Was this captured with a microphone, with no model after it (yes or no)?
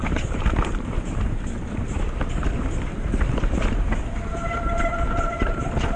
no